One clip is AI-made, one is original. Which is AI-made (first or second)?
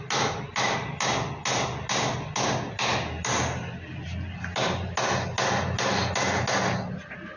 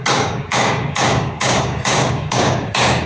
second